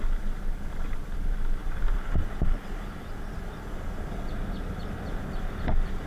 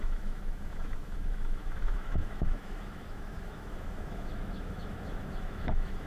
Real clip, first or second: first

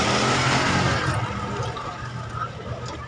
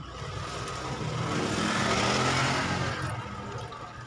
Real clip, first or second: second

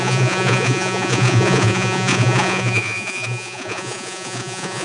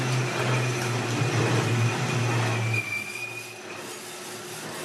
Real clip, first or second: second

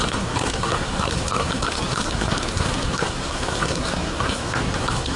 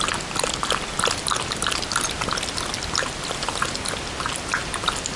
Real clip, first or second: second